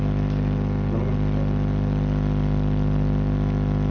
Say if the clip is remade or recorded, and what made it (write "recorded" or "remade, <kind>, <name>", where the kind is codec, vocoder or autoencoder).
recorded